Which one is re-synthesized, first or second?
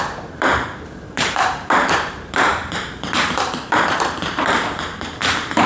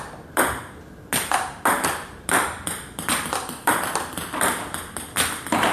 first